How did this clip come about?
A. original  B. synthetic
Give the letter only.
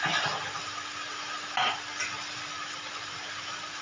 A